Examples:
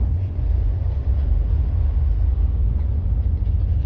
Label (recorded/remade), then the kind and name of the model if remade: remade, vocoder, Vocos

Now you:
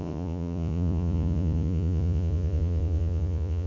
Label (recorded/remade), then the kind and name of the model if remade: remade, vocoder, Vocos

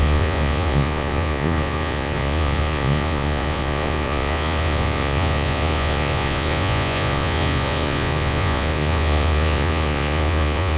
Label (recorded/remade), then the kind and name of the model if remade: remade, vocoder, Vocos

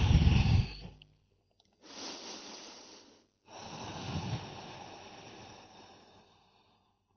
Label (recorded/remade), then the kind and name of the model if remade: recorded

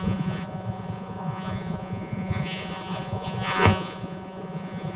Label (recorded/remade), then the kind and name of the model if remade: remade, vocoder, Vocos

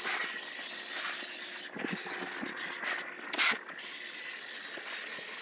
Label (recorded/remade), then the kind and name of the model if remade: recorded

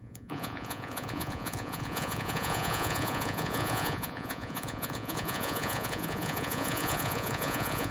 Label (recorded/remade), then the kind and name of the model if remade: remade, vocoder, Vocos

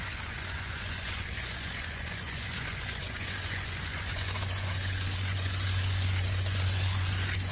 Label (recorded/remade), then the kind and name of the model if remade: remade, vocoder, Vocos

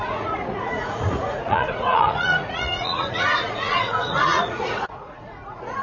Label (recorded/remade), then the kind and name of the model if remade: remade, vocoder, Vocos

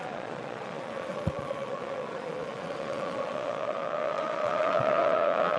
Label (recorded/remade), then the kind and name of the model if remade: remade, vocoder, Vocos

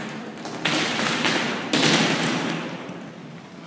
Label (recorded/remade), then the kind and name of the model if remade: recorded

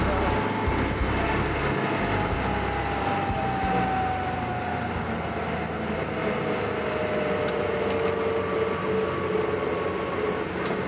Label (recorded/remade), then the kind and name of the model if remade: recorded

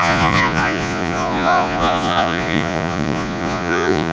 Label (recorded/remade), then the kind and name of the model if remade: remade, vocoder, Vocos